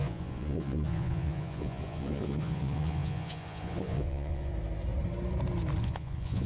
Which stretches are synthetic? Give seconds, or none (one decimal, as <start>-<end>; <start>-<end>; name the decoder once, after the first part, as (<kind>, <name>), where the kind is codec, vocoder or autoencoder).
0.0-4.5 (vocoder, Vocos); 5.8-6.5